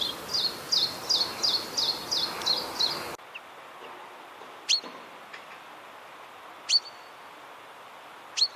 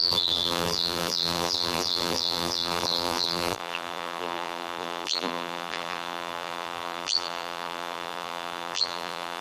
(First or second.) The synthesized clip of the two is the second